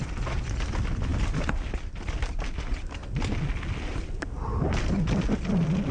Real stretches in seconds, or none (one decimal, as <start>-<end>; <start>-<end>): 0.0-5.9